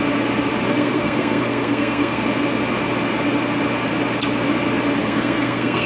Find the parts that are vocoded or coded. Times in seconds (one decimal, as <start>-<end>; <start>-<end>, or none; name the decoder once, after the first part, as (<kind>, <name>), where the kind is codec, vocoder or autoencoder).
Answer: 0.7-2.2 (codec, SNAC); 5.0-5.9